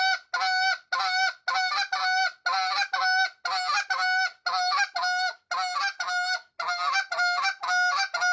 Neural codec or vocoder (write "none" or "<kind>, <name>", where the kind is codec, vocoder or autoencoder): none